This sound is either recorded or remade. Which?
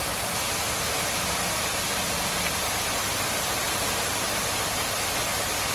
recorded